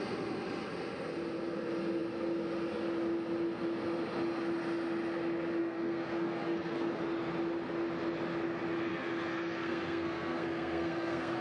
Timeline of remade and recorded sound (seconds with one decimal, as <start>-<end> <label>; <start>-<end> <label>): 0.0-5.6 recorded; 5.6-6.9 remade; 6.9-8.9 recorded; 8.9-11.4 remade